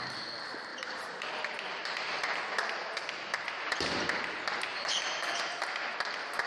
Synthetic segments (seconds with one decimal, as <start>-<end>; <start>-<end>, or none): 0.7-2.4; 4.7-5.6